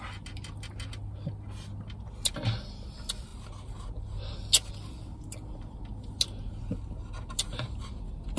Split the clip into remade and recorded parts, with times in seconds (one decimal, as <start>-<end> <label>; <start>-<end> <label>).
0.0-8.4 recorded